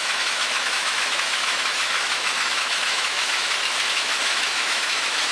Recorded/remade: remade